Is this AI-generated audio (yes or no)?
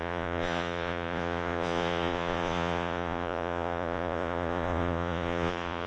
yes